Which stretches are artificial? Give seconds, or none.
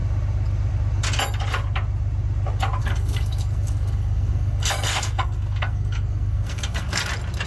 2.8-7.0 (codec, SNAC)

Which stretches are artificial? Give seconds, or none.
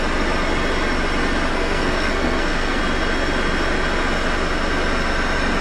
1.5-2.8 (codec, SNAC)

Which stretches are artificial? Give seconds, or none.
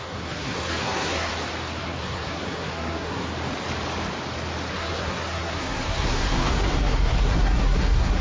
0.0-1.3 (codec, SNAC); 1.8-3.3; 4.7-8.2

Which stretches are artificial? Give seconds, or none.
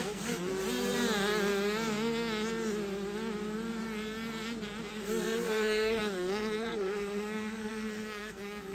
0.0-0.5 (codec, SNAC); 4.9-8.7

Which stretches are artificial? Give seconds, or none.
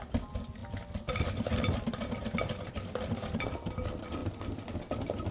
none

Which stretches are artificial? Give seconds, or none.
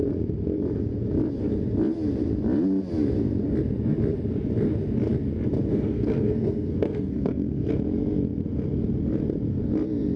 5.7-7.7 (codec, SNAC)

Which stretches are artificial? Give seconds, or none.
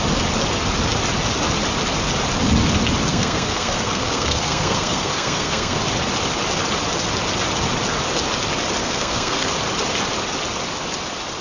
3.1-5.8 (codec, SNAC); 8.8-9.5